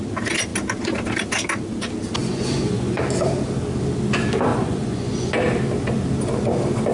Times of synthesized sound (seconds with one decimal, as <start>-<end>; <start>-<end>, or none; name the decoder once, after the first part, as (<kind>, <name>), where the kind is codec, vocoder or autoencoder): 2.2-3.0 (vocoder, Vocos); 4.5-5.3